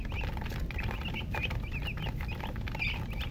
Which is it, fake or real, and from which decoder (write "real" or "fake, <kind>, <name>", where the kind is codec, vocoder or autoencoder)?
real